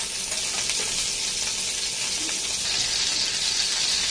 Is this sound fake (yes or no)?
no